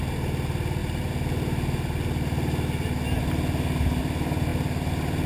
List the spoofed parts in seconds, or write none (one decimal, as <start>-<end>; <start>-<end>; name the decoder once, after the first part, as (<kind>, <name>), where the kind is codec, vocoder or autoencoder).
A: none